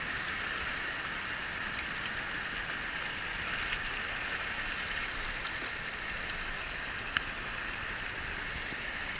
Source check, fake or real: real